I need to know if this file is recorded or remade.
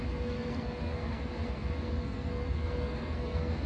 remade